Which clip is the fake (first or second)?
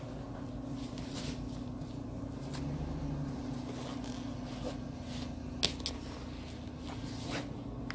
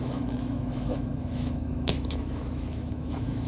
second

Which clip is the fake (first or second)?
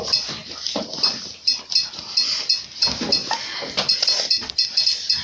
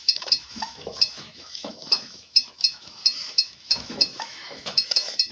second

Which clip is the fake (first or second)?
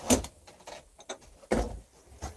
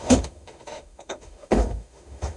second